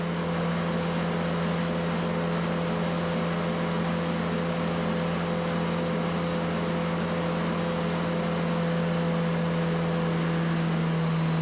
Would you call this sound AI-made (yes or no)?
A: no